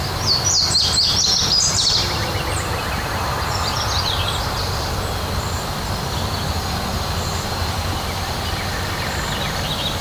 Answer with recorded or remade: recorded